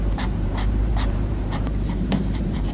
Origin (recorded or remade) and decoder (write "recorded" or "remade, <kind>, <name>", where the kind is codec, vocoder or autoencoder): remade, vocoder, BigVGAN v2